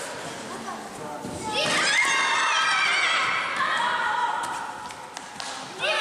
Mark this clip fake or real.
real